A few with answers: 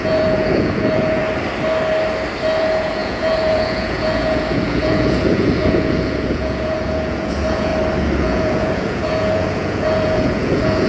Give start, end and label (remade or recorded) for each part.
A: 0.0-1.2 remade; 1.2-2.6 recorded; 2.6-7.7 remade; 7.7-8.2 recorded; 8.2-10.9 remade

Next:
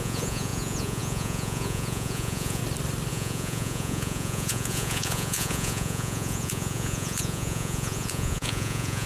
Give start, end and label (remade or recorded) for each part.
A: 0.0-2.6 remade; 2.6-3.1 recorded; 3.1-9.1 remade

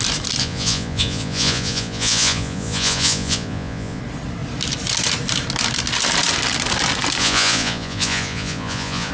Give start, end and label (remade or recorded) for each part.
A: 0.0-0.4 recorded; 0.4-4.0 remade; 4.0-7.2 recorded; 7.2-9.1 remade